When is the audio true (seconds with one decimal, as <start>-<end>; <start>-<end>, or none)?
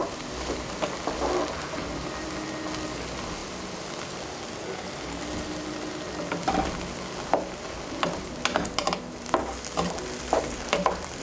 0.0-11.2